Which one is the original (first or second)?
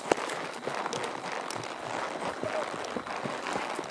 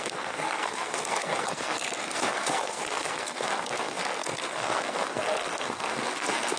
first